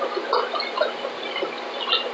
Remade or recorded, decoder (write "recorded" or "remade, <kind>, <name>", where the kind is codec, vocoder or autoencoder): recorded